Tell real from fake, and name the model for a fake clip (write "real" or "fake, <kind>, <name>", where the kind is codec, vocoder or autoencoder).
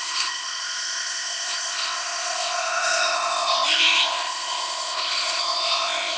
fake, codec, ZipCodec